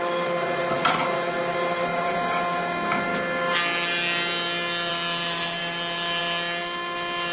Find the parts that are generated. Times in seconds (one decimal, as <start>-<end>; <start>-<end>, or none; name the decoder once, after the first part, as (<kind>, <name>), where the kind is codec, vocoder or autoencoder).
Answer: 1.9-2.7 (vocoder, Vocos)